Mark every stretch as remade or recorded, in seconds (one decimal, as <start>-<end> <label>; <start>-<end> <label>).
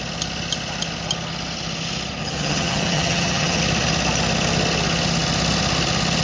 0.0-2.2 recorded; 2.2-3.6 remade; 3.6-6.2 recorded